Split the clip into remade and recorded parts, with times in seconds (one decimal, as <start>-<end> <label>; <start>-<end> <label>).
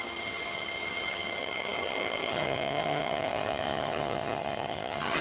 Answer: 0.0-5.2 remade